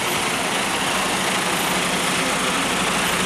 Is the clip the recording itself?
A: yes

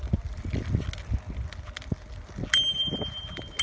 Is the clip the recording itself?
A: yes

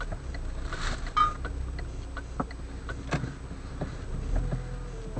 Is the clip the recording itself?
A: yes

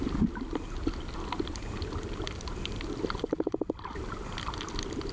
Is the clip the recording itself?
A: yes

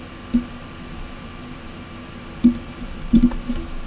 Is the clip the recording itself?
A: yes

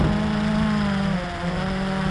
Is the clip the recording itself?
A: yes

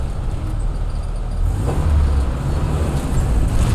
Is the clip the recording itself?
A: yes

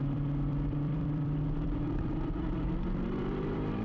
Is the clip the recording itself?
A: no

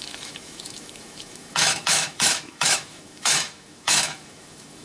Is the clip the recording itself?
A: no